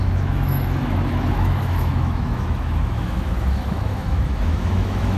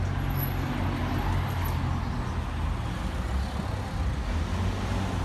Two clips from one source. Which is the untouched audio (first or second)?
second